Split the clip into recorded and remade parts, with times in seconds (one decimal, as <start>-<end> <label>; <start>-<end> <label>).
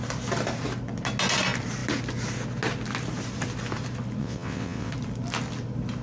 0.0-4.2 recorded; 4.2-4.9 remade; 4.9-6.0 recorded